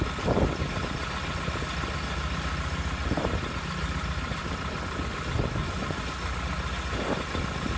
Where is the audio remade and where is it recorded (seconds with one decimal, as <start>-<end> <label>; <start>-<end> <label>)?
0.0-5.6 recorded; 5.6-6.1 remade; 6.1-7.8 recorded